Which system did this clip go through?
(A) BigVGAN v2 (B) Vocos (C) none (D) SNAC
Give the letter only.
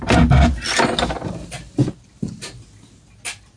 C